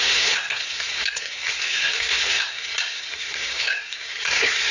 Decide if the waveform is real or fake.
fake